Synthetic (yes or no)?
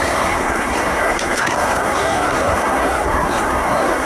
yes